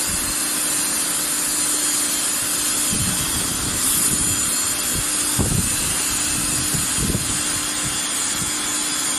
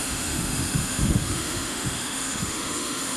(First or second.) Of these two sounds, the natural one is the first